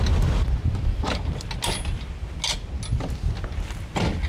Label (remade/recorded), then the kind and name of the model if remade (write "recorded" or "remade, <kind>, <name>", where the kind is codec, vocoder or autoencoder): recorded